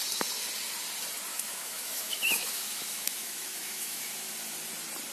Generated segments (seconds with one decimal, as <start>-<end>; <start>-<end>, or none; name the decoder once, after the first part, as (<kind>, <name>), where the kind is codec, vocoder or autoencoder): 1.3-4.3 (autoencoder, DAC-VAE)